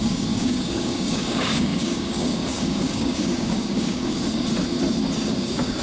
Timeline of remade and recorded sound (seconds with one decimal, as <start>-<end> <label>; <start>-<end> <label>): 0.0-4.2 remade; 4.2-5.2 recorded; 5.2-5.8 remade